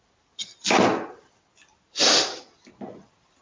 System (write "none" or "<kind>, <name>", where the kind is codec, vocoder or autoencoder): none